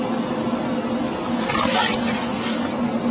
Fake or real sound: real